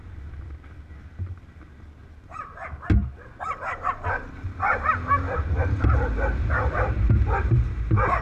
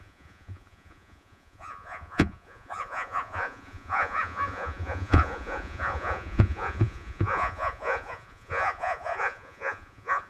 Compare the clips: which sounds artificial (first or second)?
second